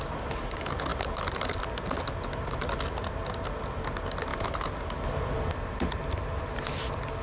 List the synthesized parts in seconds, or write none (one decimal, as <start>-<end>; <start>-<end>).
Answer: none

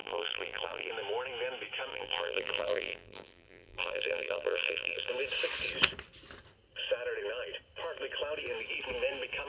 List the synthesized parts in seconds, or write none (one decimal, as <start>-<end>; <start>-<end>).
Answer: 0.0-0.9; 1.9-5.1